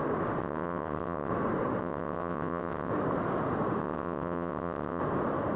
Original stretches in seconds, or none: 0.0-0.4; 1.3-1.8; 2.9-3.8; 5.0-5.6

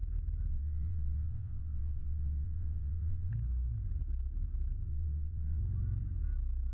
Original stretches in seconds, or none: 0.0-0.5; 3.3-4.9; 5.6-6.7